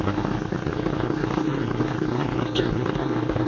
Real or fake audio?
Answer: fake